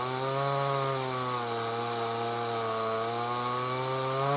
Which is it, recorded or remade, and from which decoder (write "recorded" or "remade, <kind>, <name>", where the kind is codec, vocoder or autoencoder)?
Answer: recorded